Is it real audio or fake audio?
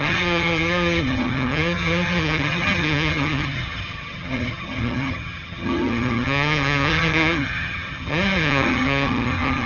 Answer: fake